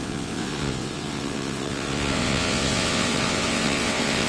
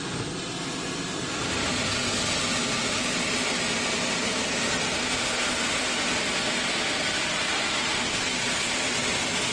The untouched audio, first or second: second